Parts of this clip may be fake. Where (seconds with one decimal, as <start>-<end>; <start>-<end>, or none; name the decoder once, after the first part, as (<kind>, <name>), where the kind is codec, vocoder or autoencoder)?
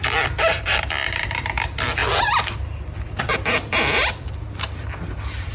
0.0-5.5 (vocoder, BigVGAN v2)